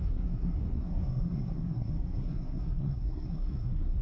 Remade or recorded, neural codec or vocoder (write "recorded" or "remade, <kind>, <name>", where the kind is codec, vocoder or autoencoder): remade, codec, SNAC